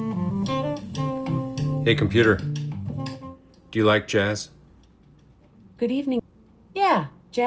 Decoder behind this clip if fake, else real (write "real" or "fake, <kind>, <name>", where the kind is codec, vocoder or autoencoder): real